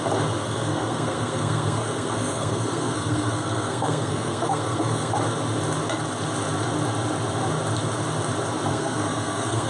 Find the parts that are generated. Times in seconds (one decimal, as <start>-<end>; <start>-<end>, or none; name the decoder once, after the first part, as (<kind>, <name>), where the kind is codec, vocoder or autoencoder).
0.4-5.1 (codec, SNAC); 8.7-9.7